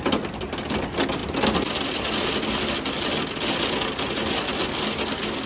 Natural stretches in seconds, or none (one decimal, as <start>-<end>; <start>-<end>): 0.0-5.5